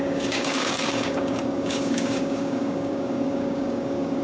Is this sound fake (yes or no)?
yes